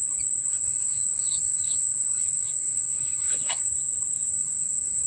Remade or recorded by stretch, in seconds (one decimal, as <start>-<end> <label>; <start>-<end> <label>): 0.0-0.5 recorded; 0.5-3.6 remade; 3.6-4.3 recorded; 4.3-5.1 remade